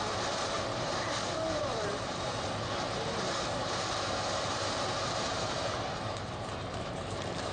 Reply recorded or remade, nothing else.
remade